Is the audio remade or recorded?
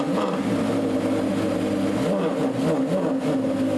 recorded